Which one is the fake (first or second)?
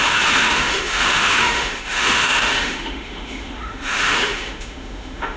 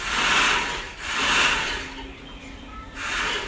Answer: first